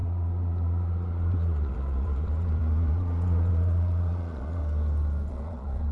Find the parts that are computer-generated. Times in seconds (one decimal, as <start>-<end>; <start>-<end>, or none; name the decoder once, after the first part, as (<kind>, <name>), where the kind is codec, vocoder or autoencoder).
0.0-4.6 (vocoder, Vocos); 5.3-5.9